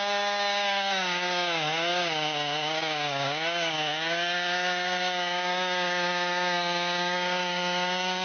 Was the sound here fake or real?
fake